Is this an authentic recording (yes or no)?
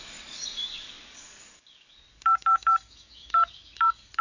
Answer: no